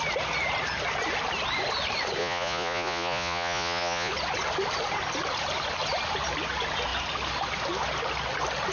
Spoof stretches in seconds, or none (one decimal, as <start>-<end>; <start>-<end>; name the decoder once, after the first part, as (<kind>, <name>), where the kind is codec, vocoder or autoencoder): 2.2-4.1 (vocoder, Vocos)